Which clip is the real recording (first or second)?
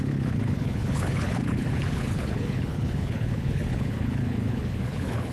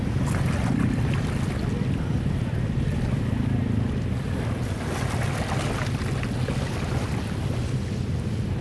second